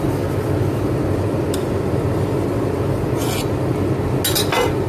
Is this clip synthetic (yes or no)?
no